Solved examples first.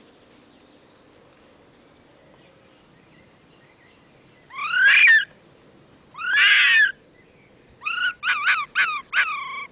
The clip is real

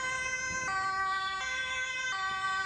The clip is real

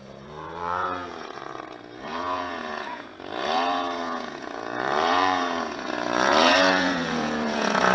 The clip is fake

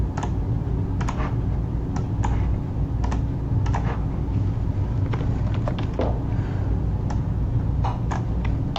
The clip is real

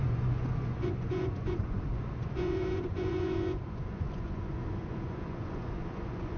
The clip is fake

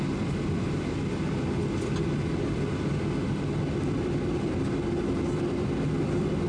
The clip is real